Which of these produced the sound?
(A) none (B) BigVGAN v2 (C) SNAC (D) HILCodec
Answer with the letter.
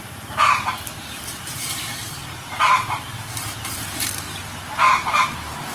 B